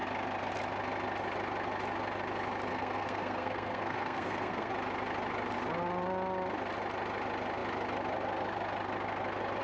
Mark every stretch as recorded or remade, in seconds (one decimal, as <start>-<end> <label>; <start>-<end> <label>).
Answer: 0.0-2.7 recorded; 2.7-4.7 remade; 4.7-9.6 recorded